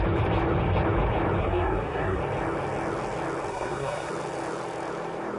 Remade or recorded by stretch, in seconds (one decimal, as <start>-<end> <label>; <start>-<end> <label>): 0.0-1.4 recorded; 1.4-2.2 remade; 2.2-3.5 recorded; 3.5-4.1 remade; 4.1-5.4 recorded